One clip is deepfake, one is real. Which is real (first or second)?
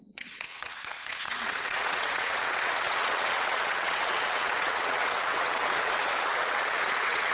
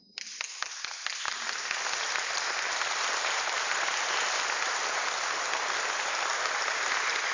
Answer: second